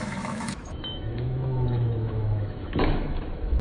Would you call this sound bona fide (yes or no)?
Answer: no